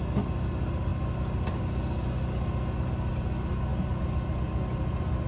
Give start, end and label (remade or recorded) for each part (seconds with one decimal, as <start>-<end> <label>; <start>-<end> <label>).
0.0-5.3 recorded